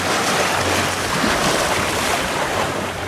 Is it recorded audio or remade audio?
recorded